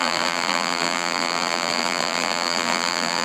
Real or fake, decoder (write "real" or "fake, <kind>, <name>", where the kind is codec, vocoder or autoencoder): fake, vocoder, BigVGAN v2